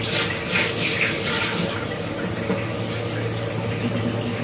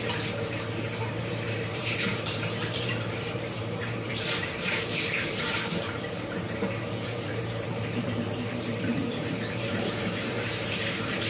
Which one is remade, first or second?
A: second